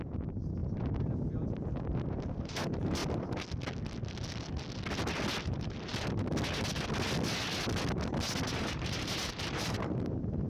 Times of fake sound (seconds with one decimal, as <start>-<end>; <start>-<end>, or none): 0.0-3.0; 5.4-5.9; 8.5-10.5